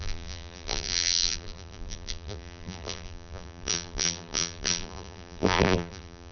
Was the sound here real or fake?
fake